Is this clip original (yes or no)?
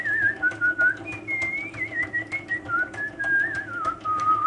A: yes